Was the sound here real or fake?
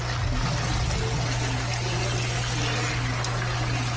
real